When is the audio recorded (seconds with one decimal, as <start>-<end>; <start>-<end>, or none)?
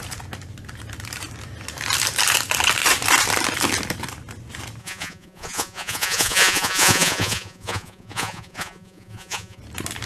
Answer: 0.0-4.8; 9.6-10.1